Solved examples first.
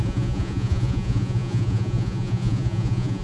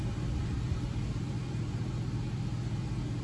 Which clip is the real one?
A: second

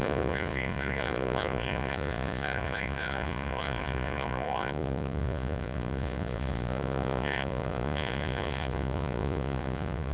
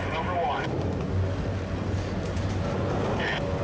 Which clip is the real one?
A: second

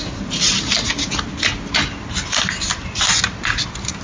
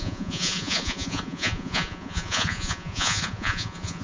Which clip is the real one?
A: first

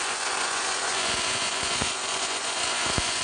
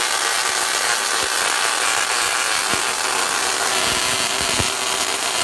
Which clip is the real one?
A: second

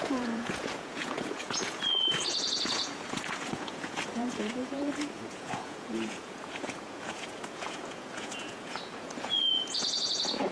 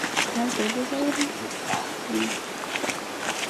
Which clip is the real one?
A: second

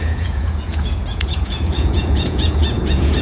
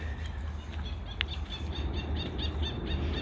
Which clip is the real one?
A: second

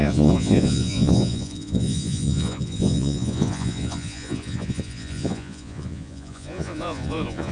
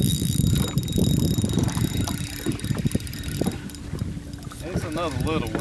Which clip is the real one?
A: second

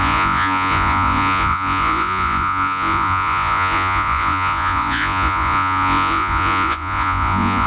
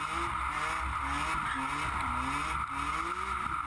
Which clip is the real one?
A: second